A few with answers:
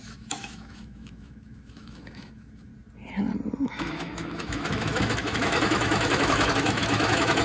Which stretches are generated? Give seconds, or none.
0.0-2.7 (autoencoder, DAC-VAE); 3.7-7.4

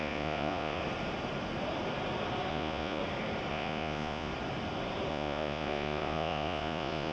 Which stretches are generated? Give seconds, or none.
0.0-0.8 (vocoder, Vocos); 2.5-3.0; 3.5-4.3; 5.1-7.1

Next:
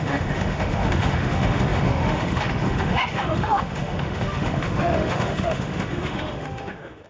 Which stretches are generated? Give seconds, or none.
0.0-7.1 (autoencoder, DAC-VAE)

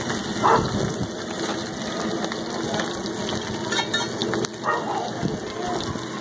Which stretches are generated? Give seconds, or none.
none

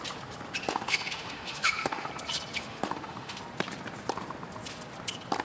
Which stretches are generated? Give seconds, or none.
0.6-2.1 (autoencoder, DAC-VAE); 2.6-3.4

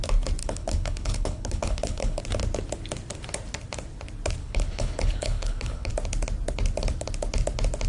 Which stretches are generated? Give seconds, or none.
0.4-2.2 (codec, HILCodec); 4.4-5.9

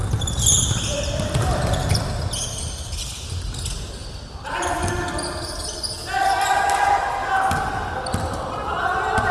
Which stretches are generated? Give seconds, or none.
0.0-2.0 (vocoder, BigVGAN v2); 4.0-4.9; 7.2-8.5